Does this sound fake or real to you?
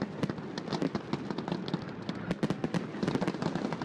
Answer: real